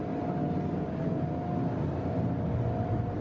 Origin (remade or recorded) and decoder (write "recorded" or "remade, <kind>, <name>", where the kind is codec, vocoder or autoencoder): recorded